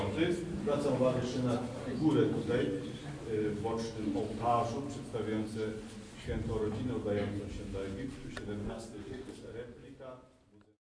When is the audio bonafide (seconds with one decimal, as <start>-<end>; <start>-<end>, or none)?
0.0-8.6; 9.3-10.9